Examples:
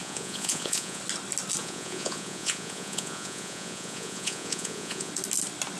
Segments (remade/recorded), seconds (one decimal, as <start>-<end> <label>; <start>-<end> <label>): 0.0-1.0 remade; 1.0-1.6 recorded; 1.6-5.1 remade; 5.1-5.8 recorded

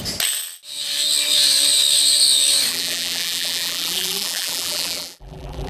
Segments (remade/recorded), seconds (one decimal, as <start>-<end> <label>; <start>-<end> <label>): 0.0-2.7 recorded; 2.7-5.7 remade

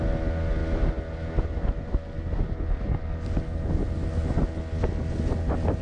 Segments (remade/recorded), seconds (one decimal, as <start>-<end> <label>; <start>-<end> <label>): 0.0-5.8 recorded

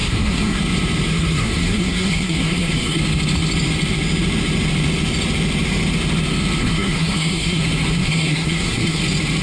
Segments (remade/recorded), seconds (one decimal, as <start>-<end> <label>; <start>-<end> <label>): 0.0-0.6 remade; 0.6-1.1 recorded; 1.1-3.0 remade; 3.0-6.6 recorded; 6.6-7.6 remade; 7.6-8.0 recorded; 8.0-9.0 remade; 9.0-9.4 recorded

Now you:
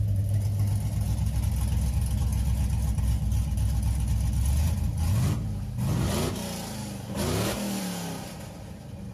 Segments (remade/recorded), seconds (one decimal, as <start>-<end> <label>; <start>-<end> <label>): 0.0-6.8 recorded; 6.8-7.8 remade; 7.8-9.1 recorded

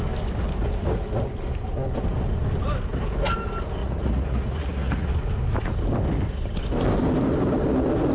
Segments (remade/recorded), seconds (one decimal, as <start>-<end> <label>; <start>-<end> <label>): 0.0-3.8 recorded; 3.8-5.1 remade; 5.1-8.1 recorded

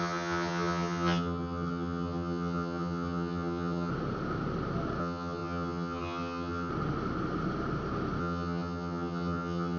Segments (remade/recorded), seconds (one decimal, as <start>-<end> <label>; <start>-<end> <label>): 0.0-3.9 remade; 3.9-5.0 recorded; 5.0-6.7 remade; 6.7-8.2 recorded; 8.2-9.8 remade

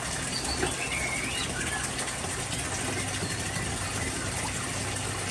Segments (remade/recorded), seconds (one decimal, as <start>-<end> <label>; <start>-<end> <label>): 0.0-5.3 recorded